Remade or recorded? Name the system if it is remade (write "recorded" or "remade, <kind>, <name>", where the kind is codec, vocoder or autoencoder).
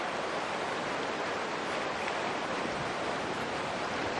remade, vocoder, BigVGAN v2